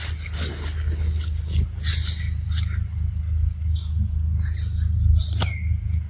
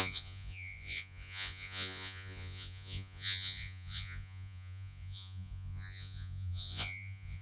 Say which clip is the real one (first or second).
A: first